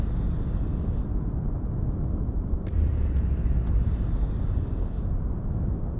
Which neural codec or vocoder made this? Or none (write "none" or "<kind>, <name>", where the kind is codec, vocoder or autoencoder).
none